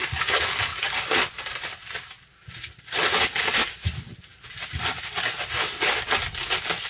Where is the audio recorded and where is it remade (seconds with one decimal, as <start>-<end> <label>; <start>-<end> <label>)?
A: 0.0-0.7 recorded; 0.7-2.0 remade; 2.0-6.9 recorded